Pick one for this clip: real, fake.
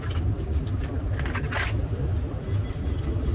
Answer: real